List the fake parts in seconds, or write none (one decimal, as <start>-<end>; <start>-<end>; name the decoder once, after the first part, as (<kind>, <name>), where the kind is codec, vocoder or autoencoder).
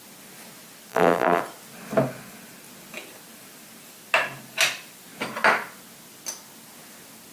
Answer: 0.9-1.4 (vocoder, BigVGAN v2)